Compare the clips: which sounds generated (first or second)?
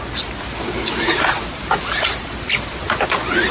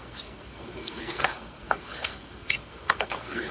second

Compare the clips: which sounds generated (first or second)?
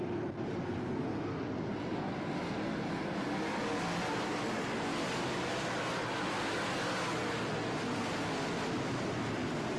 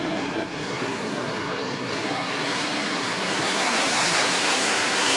second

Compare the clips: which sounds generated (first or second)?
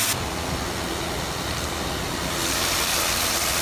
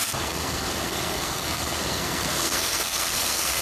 second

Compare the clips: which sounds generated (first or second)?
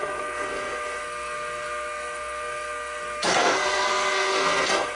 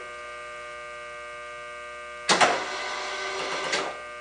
first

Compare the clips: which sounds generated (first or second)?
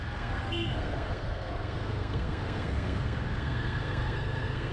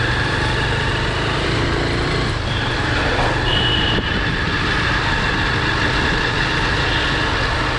first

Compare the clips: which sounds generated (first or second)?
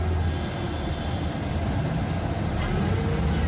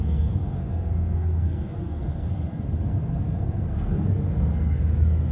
second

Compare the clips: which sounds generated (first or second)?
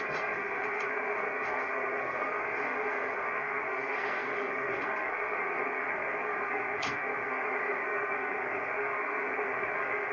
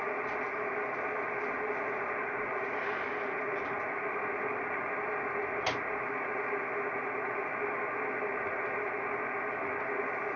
first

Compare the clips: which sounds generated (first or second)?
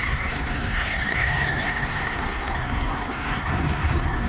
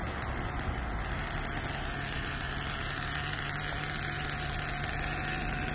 first